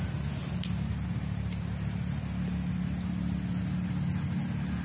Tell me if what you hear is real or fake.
real